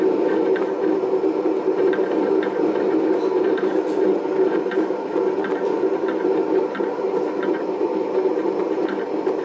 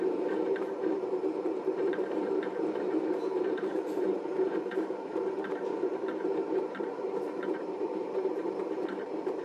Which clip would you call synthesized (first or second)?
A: second